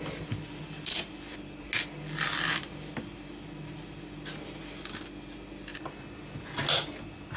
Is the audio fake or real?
real